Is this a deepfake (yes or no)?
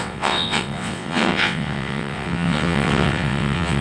yes